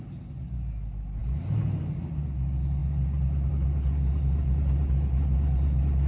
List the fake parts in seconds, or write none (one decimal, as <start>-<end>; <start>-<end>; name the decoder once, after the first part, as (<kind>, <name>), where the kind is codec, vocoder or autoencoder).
none